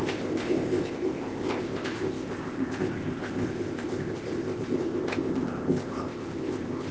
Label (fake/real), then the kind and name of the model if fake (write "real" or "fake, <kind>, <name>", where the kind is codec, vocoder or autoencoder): fake, codec, ZipCodec